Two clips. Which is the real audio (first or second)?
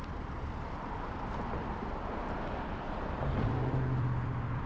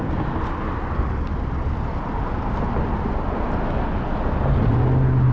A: second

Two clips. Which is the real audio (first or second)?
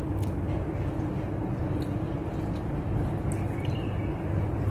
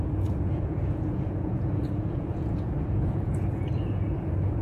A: first